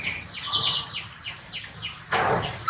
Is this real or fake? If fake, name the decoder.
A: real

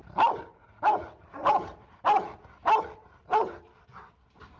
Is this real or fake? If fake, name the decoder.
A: real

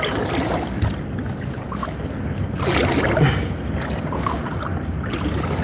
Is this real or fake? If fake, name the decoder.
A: real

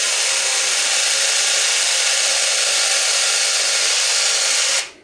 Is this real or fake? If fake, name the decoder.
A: real